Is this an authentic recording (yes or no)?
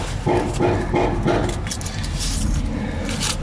yes